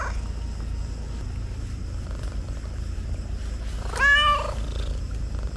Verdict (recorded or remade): recorded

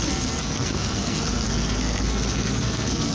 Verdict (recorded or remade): remade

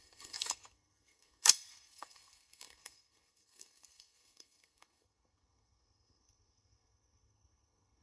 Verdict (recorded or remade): remade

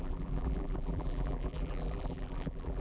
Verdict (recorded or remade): remade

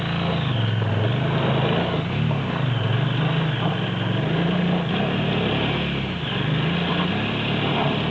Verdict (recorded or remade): recorded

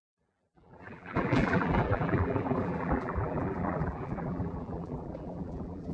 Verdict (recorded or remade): remade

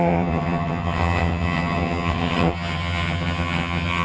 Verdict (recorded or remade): remade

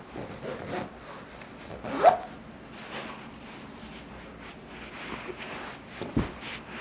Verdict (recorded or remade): recorded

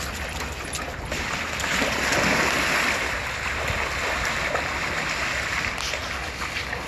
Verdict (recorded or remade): recorded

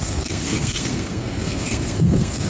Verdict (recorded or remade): remade